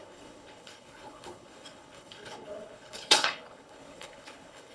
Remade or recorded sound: remade